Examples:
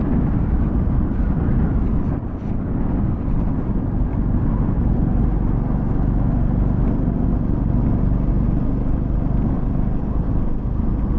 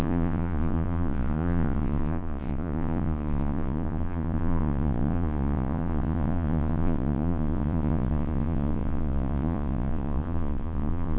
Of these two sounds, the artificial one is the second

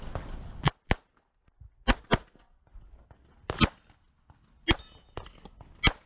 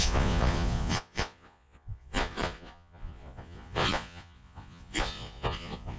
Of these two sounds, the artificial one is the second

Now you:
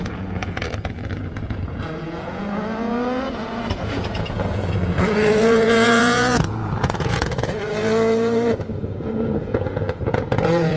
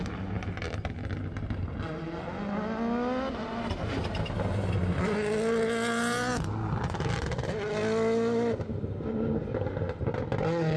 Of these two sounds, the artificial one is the first